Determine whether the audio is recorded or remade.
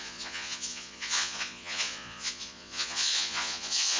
remade